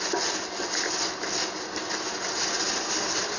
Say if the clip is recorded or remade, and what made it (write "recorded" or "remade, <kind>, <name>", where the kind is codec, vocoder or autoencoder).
recorded